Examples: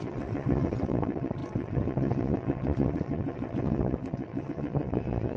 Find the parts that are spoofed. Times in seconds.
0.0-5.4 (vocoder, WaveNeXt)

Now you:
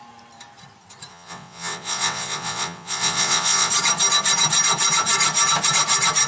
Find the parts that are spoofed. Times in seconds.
1.1-3.7 (vocoder, WaveNeXt)

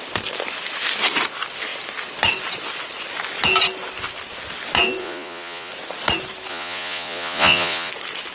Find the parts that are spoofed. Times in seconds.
5.0-5.7 (vocoder, Vocos); 6.5-7.9